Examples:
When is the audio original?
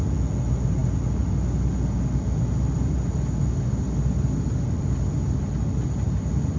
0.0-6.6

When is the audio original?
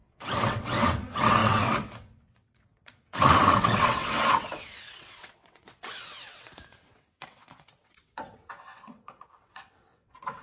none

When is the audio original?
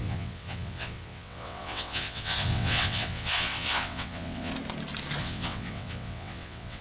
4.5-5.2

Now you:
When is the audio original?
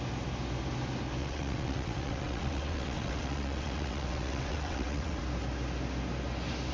0.0-1.2; 5.2-6.7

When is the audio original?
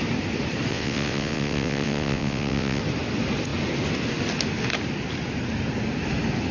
0.0-0.7; 2.8-6.5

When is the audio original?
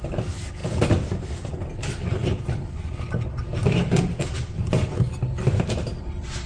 0.0-6.5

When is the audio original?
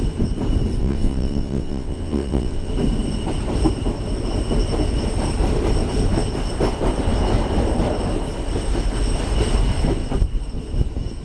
0.0-0.8; 2.7-11.2